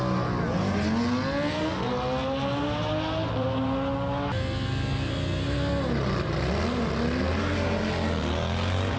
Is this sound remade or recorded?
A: recorded